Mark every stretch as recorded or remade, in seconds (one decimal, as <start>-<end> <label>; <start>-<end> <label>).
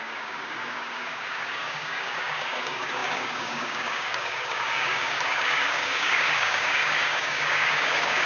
0.0-8.3 remade